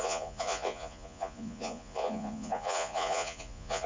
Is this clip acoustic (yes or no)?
no